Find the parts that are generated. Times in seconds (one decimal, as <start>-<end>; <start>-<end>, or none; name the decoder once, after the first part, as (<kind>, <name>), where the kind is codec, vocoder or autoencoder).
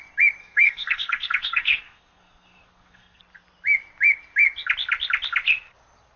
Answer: 0.4-3.2 (codec, SNAC)